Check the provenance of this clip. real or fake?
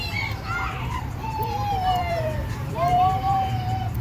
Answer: fake